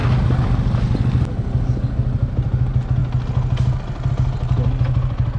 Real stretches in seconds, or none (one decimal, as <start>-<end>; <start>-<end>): 0.0-5.4